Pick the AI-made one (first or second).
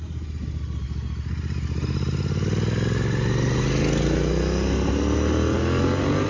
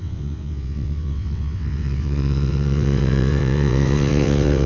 second